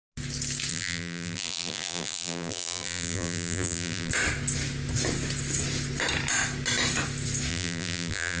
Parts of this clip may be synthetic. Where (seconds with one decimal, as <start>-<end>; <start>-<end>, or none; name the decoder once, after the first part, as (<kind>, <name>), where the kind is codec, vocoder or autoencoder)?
0.7-4.1 (vocoder, BigVGAN v2); 7.5-8.4